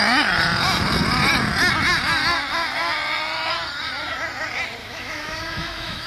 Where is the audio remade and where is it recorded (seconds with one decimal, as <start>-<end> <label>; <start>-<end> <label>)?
0.0-4.8 recorded; 4.8-6.1 remade